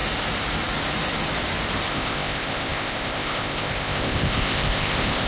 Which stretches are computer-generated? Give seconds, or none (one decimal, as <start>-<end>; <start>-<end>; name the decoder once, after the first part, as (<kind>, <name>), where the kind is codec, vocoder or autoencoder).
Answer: 1.9-5.3 (codec, ZipCodec)